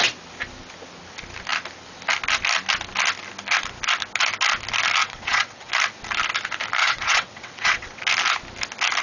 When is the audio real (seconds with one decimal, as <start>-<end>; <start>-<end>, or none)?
0.0-5.0; 5.7-6.8; 8.0-9.0